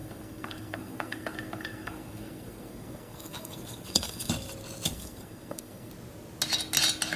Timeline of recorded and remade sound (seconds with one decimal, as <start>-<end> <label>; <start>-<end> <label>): 0.0-4.3 remade; 4.3-4.9 recorded; 4.9-5.9 remade; 5.9-7.2 recorded